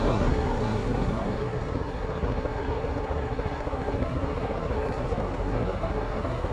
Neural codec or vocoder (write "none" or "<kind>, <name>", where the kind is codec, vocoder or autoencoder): codec, SNAC